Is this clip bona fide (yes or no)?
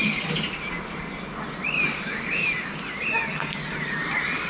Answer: yes